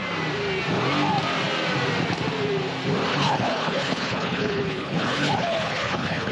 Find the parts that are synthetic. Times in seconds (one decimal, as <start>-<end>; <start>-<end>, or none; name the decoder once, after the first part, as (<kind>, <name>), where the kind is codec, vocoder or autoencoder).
3.1-6.3 (codec, HILCodec)